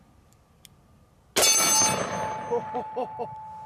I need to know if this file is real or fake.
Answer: real